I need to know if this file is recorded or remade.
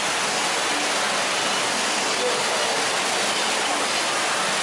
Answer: recorded